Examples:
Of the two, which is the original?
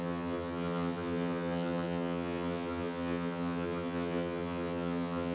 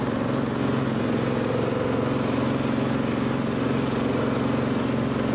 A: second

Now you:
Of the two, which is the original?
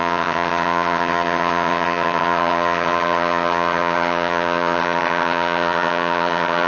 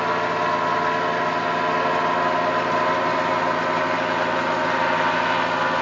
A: second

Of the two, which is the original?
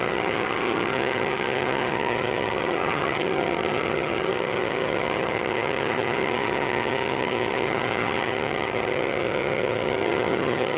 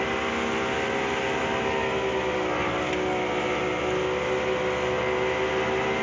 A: second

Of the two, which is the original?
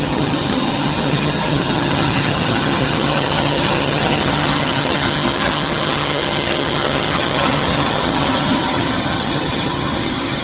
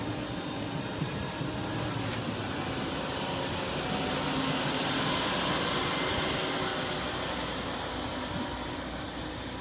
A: second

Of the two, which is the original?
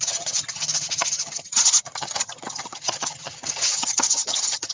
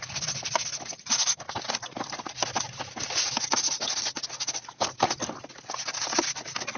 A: second